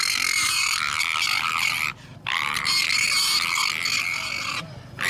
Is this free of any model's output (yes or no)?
no